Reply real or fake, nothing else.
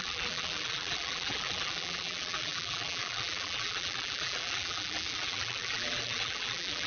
fake